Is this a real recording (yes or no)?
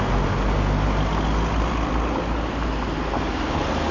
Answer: yes